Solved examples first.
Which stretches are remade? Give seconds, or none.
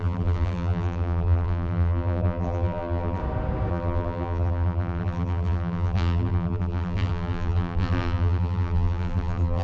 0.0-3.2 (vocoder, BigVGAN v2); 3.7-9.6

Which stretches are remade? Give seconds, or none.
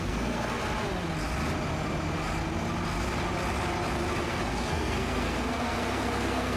0.0-0.6 (codec, SNAC); 4.2-6.6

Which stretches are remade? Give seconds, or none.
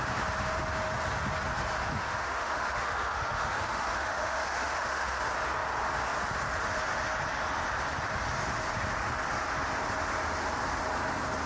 2.0-5.2 (autoencoder, DAC-VAE)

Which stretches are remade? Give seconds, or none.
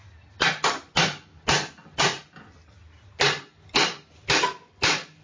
none